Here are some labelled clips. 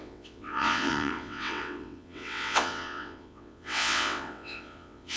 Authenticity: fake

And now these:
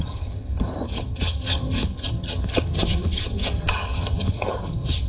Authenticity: fake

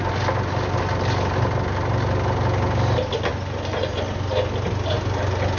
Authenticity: real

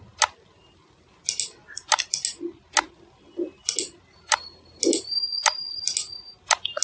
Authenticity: real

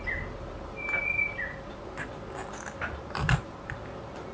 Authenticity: real